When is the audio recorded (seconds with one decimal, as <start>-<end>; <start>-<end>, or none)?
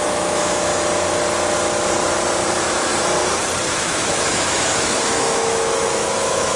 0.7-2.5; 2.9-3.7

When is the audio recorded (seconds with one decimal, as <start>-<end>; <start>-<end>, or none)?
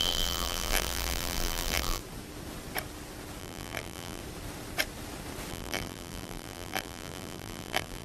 2.0-3.4; 4.2-5.5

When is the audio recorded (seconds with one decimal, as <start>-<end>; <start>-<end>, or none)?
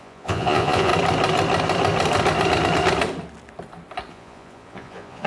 0.9-4.1